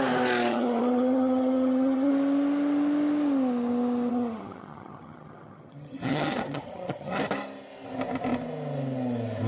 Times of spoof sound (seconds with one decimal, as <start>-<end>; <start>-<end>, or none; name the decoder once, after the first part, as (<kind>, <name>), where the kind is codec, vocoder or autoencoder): 0.5-2.1 (vocoder, HiFi-GAN); 4.1-7.2